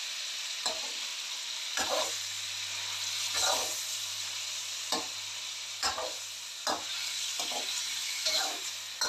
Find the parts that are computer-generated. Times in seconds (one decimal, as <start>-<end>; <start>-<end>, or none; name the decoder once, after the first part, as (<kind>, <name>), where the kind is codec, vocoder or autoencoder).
8.0-8.6 (autoencoder, DAC-VAE)